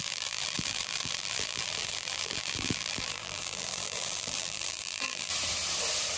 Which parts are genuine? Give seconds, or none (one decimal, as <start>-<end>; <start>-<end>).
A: 5.3-6.2